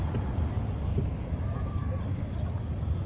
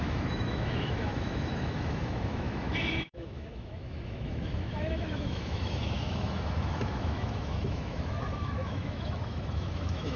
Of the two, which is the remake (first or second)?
second